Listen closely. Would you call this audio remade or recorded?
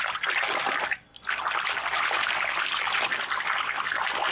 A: recorded